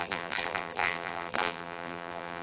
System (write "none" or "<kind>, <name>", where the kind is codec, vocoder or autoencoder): vocoder, BigVGAN v2